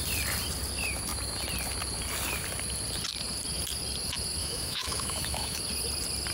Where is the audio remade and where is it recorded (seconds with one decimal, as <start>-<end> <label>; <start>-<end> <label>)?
0.0-4.4 recorded; 4.4-5.6 remade; 5.6-6.3 recorded